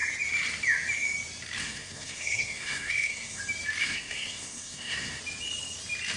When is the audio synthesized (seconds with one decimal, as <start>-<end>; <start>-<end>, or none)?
1.6-3.4; 3.8-5.2